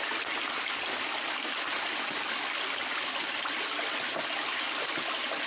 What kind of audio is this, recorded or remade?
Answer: recorded